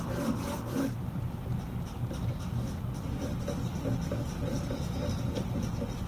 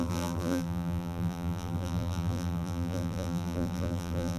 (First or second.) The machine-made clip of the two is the second